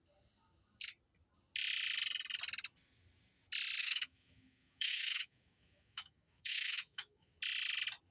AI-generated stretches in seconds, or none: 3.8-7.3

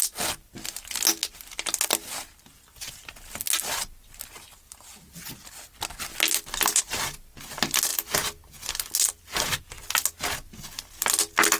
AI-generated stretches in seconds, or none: none

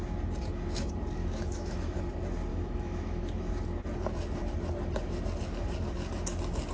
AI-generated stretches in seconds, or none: 1.2-2.0; 2.5-3.5

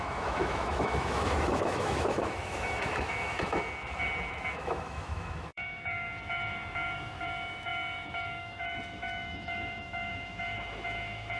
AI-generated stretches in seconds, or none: 0.0-11.4

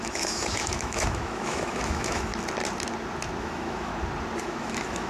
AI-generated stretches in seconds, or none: 0.0-2.3; 3.4-3.9; 4.4-5.1

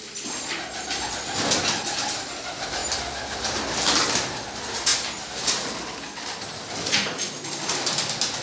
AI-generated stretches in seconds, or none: none